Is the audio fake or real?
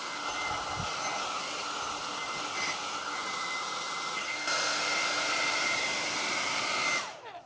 real